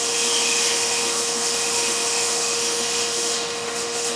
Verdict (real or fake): fake